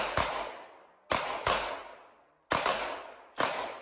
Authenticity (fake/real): real